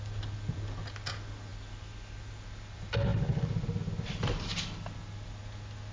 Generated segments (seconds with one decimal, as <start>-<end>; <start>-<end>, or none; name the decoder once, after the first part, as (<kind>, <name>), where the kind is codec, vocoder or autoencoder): none